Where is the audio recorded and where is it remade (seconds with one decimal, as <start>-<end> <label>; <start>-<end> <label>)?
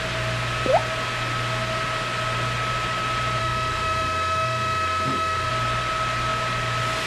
0.0-3.4 recorded; 3.4-5.5 remade; 5.5-7.1 recorded